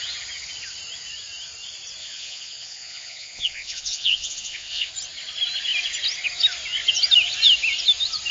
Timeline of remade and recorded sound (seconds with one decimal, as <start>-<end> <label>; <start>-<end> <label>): 0.0-2.0 recorded; 2.0-4.9 remade; 4.9-8.3 recorded